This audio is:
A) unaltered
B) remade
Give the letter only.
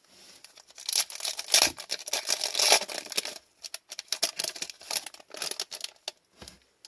A